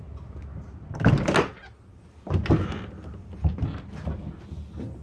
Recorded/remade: recorded